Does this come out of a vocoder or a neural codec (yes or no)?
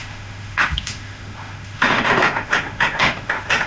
yes